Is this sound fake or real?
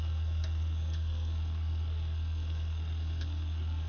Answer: fake